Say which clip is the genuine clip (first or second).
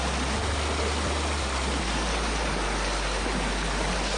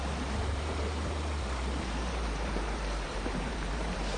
first